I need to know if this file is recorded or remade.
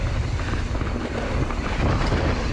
recorded